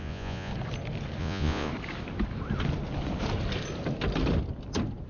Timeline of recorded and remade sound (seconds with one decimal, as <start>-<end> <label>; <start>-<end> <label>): 0.0-0.5 remade; 0.5-1.2 recorded; 1.2-1.7 remade; 1.7-5.1 recorded